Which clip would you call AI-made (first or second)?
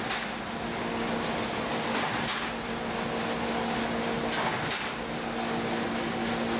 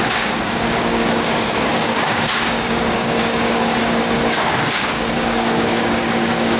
second